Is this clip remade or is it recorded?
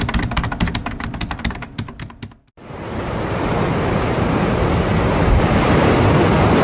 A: recorded